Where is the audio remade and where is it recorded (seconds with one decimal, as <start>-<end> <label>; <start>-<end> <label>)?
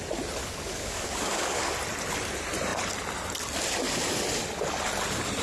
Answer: 0.0-0.4 recorded; 0.4-1.7 remade; 1.7-5.4 recorded